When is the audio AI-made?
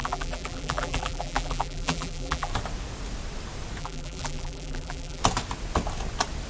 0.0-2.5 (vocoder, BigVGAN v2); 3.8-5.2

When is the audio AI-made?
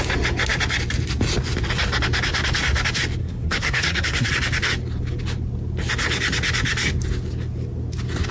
3.2-4.3 (codec, SNAC)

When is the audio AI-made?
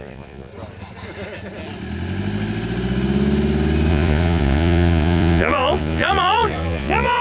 0.0-0.5 (vocoder, Vocos); 3.9-7.2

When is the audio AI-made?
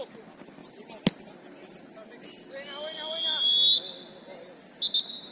none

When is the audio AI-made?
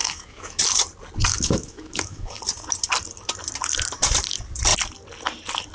0.0-0.6 (autoencoder, DAC-VAE); 1.3-2.4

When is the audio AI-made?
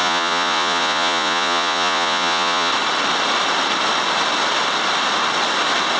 0.0-2.7 (vocoder, Vocos)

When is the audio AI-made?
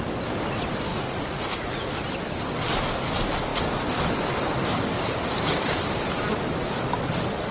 0.9-1.9 (vocoder, Vocos)